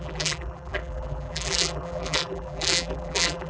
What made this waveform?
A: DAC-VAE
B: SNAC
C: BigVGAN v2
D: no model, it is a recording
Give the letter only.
C